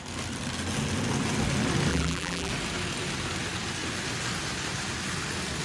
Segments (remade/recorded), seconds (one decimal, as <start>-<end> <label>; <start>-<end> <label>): 0.0-1.9 recorded; 1.9-2.5 remade; 2.5-5.6 recorded